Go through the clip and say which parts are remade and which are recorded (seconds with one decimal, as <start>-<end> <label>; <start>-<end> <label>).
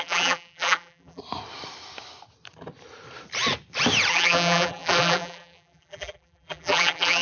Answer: 0.0-1.2 remade; 1.2-4.1 recorded; 4.1-7.2 remade